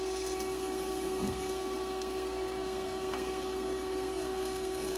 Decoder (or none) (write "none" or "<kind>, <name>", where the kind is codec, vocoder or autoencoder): codec, SNAC